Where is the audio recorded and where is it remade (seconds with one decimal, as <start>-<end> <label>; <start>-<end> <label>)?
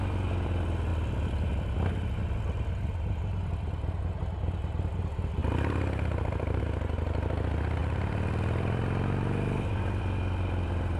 0.0-0.9 recorded; 0.9-4.2 remade; 4.2-5.4 recorded; 5.4-6.6 remade; 6.6-7.8 recorded; 7.8-10.0 remade; 10.0-11.0 recorded